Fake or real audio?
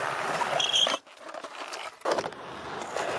real